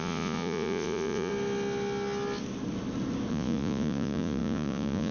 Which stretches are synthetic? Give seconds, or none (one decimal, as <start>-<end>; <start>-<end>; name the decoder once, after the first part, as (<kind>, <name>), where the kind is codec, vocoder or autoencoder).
0.0-1.3 (vocoder, Vocos); 3.3-5.1